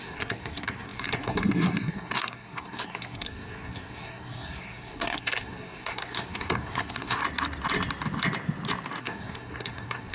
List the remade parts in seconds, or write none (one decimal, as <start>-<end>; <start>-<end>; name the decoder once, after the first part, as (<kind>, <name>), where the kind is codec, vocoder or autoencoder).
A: 0.0-7.2 (codec, SNAC); 9.0-10.1